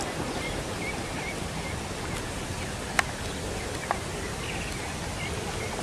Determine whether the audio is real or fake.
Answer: real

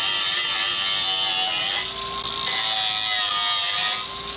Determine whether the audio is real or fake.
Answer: real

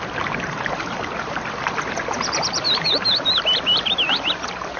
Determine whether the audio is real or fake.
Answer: fake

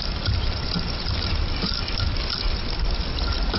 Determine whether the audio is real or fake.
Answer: real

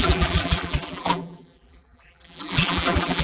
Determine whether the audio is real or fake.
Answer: fake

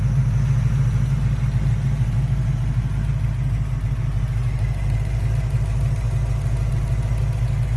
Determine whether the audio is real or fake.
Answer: real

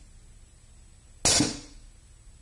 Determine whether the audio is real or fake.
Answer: real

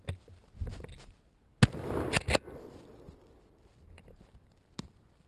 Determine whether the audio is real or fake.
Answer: real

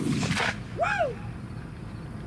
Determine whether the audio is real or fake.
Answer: real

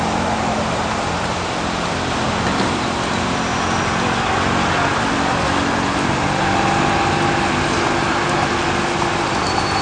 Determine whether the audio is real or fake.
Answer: real